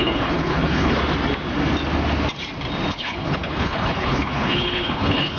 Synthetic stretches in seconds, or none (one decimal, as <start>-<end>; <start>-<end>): 0.0-1.0; 2.9-5.4